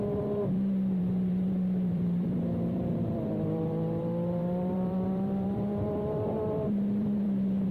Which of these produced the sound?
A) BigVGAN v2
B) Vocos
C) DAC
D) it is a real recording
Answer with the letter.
A